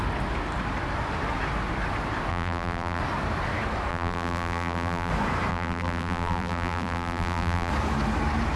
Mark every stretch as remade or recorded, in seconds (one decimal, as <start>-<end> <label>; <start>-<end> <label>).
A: 0.0-2.3 recorded; 2.3-3.0 remade; 3.0-3.9 recorded; 3.9-5.1 remade; 5.1-5.5 recorded; 5.5-7.7 remade; 7.7-8.6 recorded

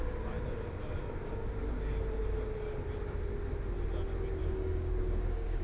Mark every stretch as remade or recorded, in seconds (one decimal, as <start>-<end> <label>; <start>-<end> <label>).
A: 0.0-1.0 recorded; 1.0-1.6 remade; 1.6-4.4 recorded; 4.4-5.6 remade

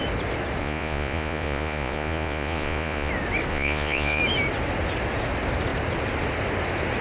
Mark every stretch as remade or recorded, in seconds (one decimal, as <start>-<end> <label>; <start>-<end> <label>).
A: 0.0-0.6 recorded; 0.6-3.1 remade; 3.1-3.5 recorded; 3.5-4.2 remade; 4.2-7.0 recorded

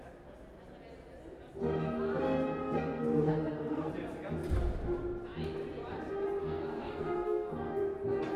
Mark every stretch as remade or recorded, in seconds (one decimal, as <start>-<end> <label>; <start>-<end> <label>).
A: 0.0-2.6 recorded; 2.6-3.9 remade; 3.9-6.4 recorded; 6.4-7.8 remade; 7.8-8.4 recorded

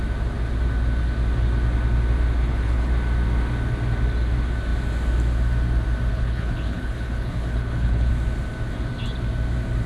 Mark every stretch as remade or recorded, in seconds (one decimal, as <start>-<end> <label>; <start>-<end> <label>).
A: 0.0-2.4 recorded; 2.4-2.9 remade; 2.9-6.1 recorded; 6.1-8.1 remade; 8.1-9.9 recorded

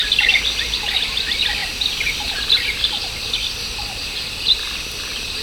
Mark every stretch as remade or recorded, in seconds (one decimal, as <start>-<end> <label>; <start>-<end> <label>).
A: 0.0-0.9 recorded; 0.9-5.4 remade

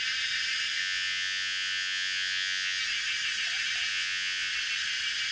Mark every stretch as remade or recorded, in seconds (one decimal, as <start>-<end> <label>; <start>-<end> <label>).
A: 0.0-0.8 recorded; 0.8-2.8 remade; 2.8-3.9 recorded; 3.9-4.5 remade; 4.5-5.3 recorded